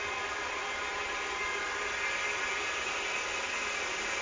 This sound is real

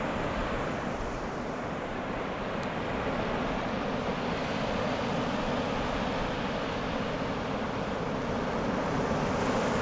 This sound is real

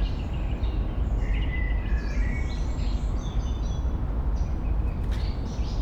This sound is real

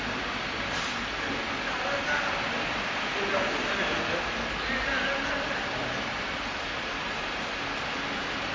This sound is real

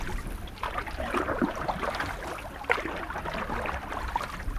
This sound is real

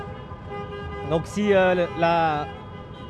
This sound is real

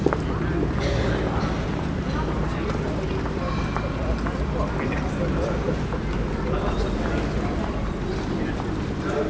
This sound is real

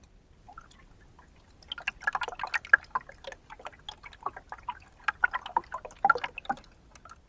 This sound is real